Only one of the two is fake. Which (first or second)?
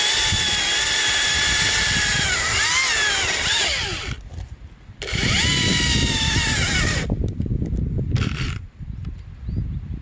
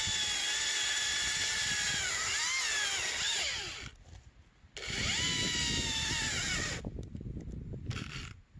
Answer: first